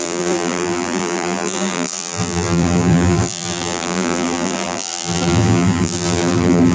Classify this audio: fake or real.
fake